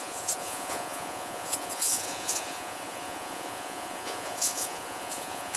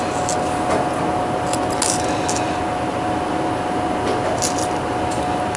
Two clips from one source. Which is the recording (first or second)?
second